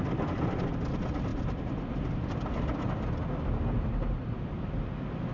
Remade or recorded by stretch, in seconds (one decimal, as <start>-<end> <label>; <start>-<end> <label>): 0.0-5.3 recorded